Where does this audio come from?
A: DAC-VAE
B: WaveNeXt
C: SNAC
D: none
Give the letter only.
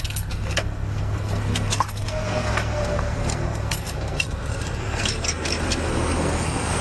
C